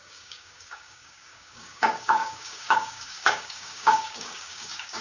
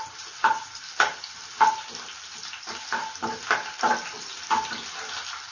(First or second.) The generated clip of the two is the first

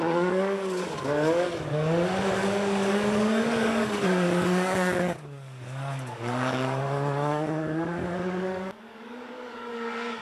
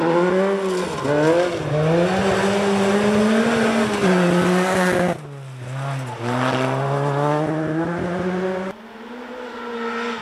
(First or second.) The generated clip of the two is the first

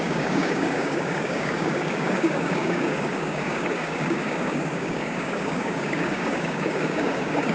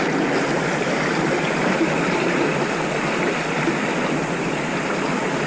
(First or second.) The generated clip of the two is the first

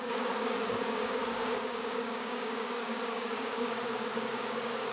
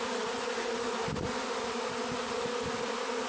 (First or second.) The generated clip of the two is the first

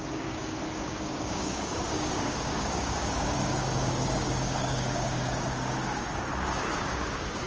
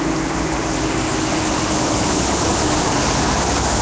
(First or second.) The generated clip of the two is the first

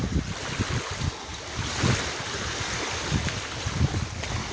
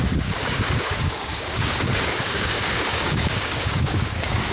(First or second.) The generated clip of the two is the second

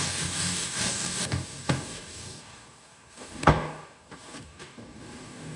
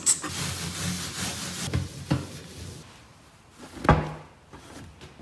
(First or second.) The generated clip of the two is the first